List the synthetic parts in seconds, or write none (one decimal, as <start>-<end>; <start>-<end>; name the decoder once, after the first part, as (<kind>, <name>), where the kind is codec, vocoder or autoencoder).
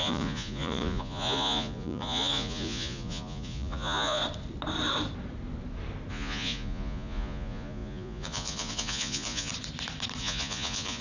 0.0-4.2 (vocoder, Vocos); 6.1-9.5; 10.2-11.0